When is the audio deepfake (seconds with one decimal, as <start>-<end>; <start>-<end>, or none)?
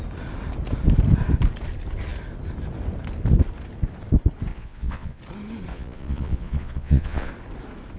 4.5-5.2; 5.7-7.3